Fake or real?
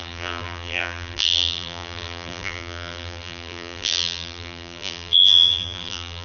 fake